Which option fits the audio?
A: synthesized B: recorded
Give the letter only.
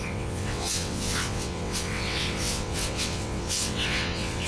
A